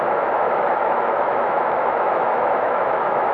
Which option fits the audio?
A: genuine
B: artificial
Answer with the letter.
B